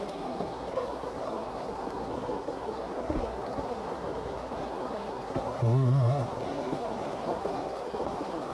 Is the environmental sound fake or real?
fake